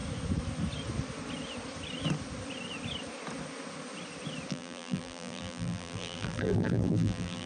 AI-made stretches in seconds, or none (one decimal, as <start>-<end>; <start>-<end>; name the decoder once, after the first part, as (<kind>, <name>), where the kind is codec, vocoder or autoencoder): 4.5-7.5 (vocoder, BigVGAN v2)